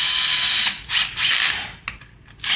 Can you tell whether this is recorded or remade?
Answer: recorded